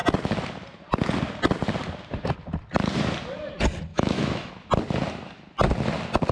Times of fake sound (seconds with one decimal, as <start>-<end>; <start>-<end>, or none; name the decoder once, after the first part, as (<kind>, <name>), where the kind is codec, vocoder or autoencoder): 3.9-4.5 (autoencoder, DAC-VAE)